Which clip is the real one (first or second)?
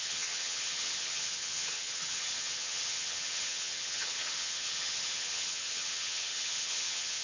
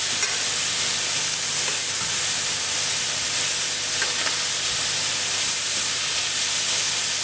second